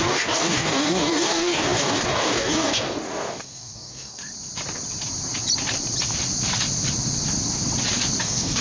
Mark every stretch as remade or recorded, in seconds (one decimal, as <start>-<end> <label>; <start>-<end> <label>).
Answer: 0.0-4.2 remade; 4.2-8.2 recorded; 8.2-8.6 remade